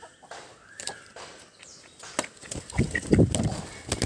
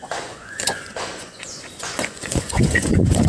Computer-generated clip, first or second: second